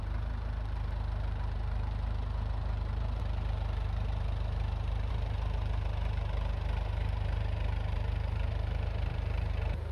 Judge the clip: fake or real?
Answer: fake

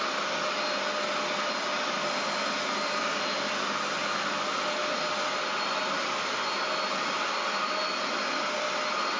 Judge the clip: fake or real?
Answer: real